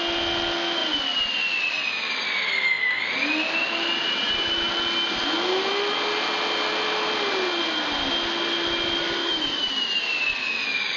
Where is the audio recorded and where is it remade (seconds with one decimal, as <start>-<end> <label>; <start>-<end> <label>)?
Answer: 0.0-9.2 recorded; 9.2-10.0 remade; 10.0-10.4 recorded; 10.4-11.0 remade